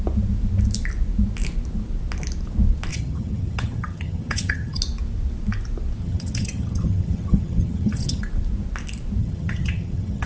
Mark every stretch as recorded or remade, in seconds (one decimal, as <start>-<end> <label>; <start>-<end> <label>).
0.0-2.9 recorded; 2.9-4.8 remade; 4.8-6.0 recorded; 6.0-8.2 remade; 8.2-9.2 recorded; 9.2-10.3 remade